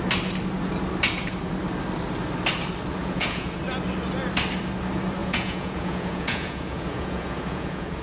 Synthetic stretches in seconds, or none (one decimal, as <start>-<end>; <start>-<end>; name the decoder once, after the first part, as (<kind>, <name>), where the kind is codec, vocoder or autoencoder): 3.0-3.6 (vocoder, Vocos); 5.2-8.0